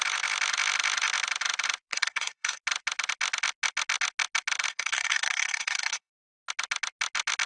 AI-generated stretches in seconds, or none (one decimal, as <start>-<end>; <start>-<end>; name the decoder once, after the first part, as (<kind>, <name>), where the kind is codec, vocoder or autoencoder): 1.9-2.6 (codec, SNAC); 4.7-6.1